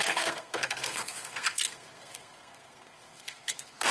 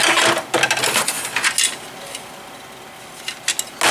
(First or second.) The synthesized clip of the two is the first